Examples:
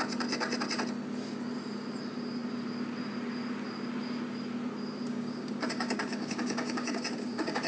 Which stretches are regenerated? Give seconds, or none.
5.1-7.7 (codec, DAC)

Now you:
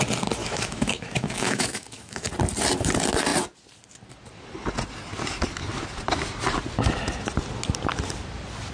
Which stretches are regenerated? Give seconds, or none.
0.4-2.3 (autoencoder, DAC-VAE)

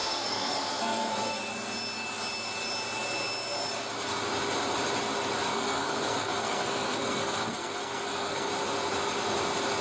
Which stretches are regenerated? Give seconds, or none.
0.0-1.4 (codec, SNAC); 5.5-8.5

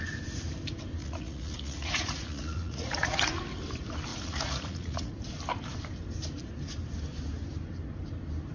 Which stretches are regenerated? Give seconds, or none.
1.0-3.4 (vocoder, Vocos); 4.1-5.1

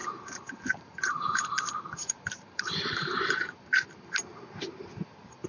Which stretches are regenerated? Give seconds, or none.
0.0-3.3 (vocoder, BigVGAN v2)

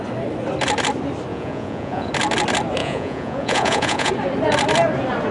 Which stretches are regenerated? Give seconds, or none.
1.3-2.1 (vocoder, Vocos); 2.8-4.1